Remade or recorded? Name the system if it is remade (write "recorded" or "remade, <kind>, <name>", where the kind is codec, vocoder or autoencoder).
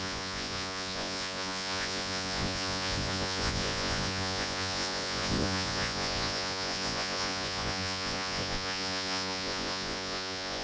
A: remade, vocoder, Vocos